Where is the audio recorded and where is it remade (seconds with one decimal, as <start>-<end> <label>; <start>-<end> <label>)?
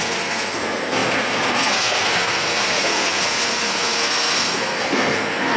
0.0-5.6 remade